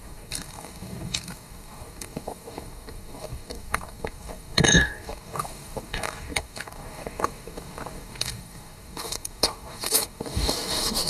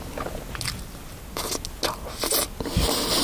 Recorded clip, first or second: second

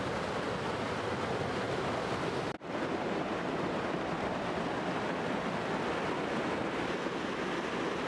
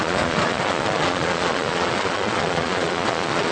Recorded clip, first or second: first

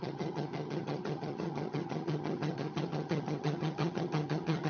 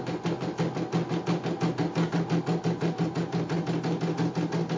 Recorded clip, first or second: second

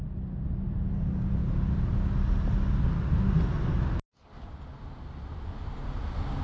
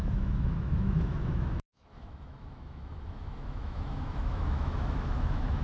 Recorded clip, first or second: first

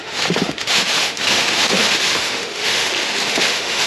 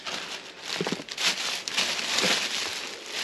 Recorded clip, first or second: second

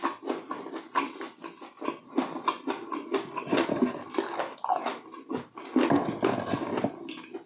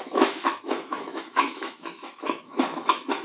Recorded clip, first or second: first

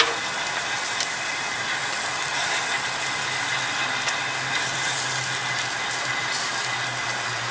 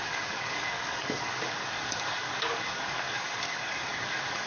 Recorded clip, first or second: first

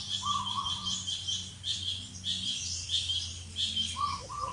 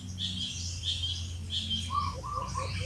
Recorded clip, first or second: second